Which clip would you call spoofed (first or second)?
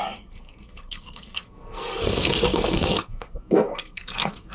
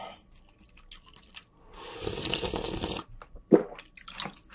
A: first